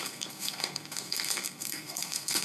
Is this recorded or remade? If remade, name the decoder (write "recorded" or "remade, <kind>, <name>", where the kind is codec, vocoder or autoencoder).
remade, codec, SNAC